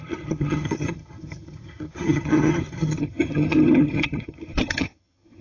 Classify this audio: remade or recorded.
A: remade